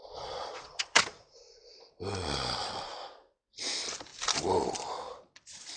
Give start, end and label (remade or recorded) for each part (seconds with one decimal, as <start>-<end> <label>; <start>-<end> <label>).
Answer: 0.0-1.0 remade; 1.0-5.8 recorded